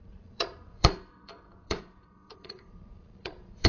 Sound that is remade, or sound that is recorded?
remade